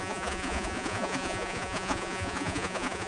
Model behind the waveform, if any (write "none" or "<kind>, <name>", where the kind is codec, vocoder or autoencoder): vocoder, Vocos